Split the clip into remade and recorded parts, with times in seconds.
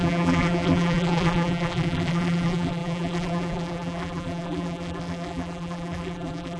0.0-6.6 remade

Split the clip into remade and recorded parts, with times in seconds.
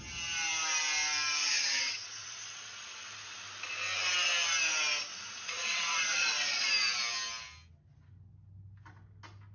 0.0-1.4 recorded; 1.4-2.4 remade; 2.4-5.1 recorded; 5.1-6.7 remade; 6.7-9.5 recorded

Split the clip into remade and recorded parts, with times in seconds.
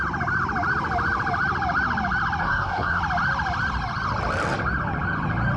0.0-2.4 recorded; 2.4-3.0 remade; 3.0-5.6 recorded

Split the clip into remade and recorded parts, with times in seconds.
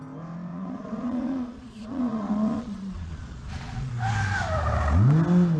0.0-0.5 recorded; 0.5-3.9 remade; 3.9-5.6 recorded